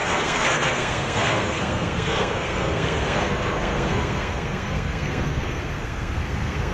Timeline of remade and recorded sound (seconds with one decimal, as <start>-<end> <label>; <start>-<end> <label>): 0.0-6.7 remade